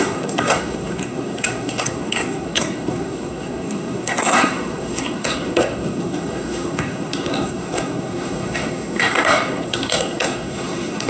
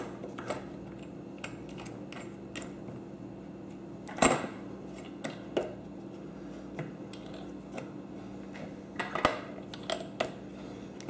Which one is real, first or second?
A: second